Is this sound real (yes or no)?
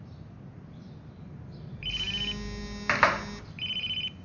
yes